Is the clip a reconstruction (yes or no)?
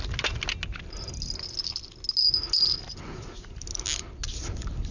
no